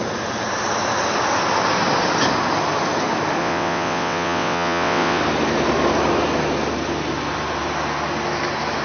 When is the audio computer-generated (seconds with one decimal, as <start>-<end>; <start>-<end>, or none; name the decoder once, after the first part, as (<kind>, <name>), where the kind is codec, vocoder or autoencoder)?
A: 3.4-5.2 (vocoder, WaveNeXt)